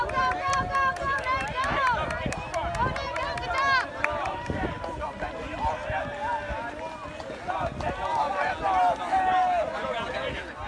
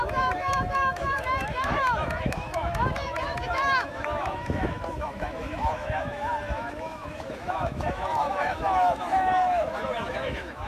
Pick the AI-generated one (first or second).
second